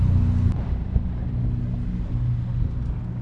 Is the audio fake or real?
real